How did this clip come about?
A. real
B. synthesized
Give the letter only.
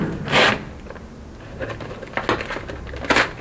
A